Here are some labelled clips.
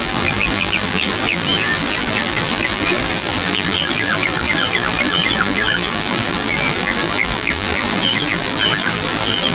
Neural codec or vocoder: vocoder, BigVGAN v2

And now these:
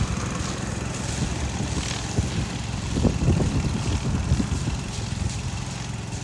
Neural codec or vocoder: none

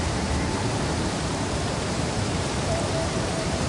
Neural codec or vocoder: vocoder, BigVGAN v2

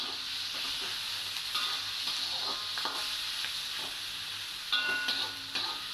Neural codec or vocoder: none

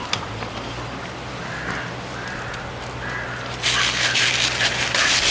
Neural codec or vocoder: none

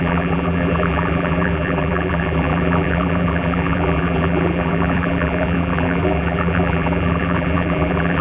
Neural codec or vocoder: vocoder, BigVGAN v2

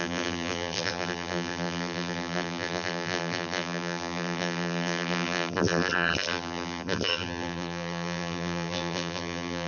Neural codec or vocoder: vocoder, BigVGAN v2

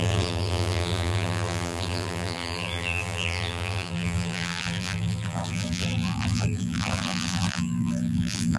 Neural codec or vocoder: vocoder, BigVGAN v2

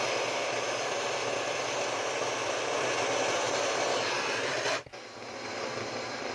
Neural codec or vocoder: none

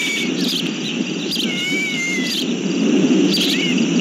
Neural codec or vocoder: vocoder, BigVGAN v2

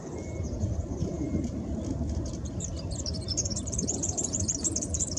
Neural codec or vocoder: vocoder, BigVGAN v2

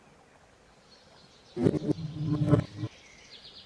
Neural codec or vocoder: none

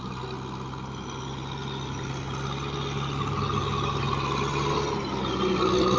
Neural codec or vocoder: none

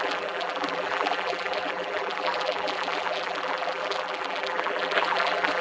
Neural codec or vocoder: vocoder, BigVGAN v2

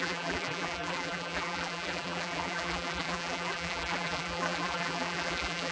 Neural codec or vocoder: vocoder, BigVGAN v2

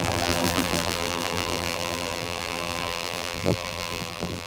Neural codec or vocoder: vocoder, BigVGAN v2